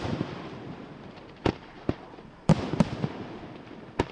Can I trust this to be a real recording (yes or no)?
no